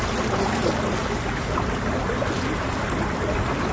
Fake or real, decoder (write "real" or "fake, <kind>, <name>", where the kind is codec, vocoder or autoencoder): real